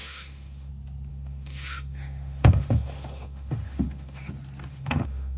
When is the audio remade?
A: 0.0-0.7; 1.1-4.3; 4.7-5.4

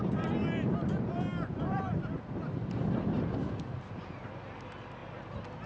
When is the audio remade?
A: none

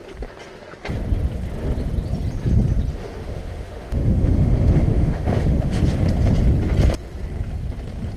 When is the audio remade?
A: 2.9-5.8

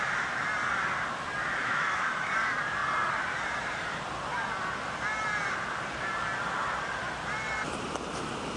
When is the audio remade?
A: 1.6-2.3

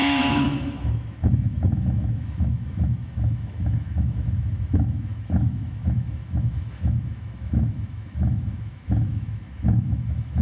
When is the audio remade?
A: 0.0-10.4

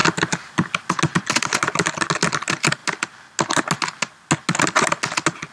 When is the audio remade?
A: none

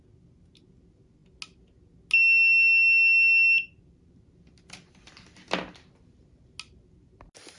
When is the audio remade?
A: none

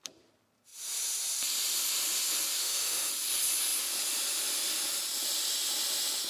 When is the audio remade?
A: 2.6-3.1